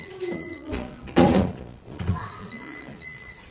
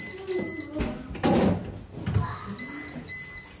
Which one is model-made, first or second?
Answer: first